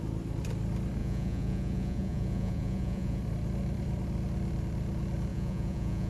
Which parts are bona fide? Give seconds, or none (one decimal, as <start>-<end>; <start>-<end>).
0.0-1.0; 3.2-5.3